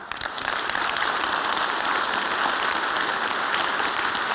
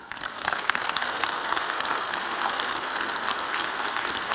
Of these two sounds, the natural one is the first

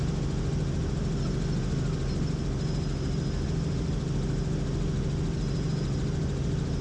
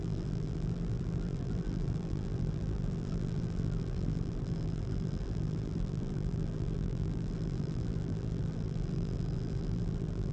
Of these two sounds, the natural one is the first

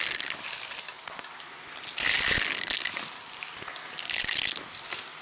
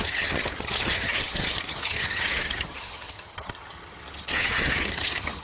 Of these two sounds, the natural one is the first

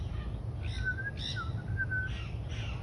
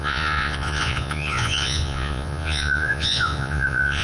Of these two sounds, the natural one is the first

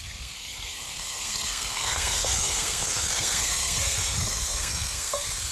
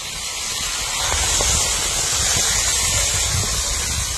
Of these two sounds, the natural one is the second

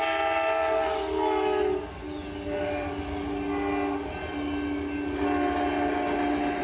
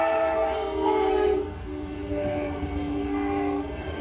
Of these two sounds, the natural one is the first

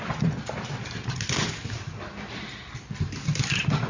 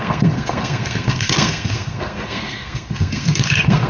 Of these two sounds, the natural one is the first